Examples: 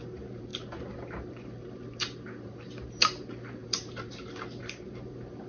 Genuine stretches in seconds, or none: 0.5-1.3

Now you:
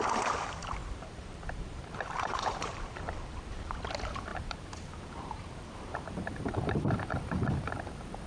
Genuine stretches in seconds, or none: 0.0-0.8; 3.7-4.3; 7.1-8.3

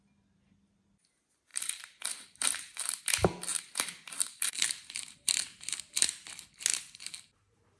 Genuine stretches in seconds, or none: 0.0-1.5; 3.0-3.5; 5.6-6.7